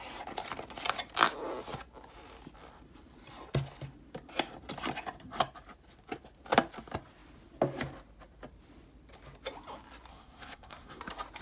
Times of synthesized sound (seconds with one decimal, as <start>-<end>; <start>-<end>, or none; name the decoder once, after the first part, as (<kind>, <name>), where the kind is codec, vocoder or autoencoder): 10.1-11.0 (codec, SNAC)